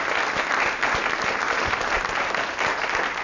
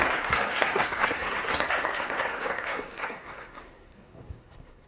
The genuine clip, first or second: first